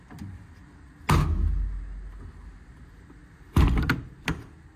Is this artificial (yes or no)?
no